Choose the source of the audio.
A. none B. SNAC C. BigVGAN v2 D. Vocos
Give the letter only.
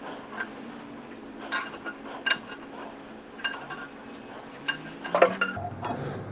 A